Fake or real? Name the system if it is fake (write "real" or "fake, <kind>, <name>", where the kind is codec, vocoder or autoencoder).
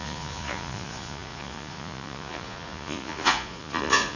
fake, vocoder, Vocos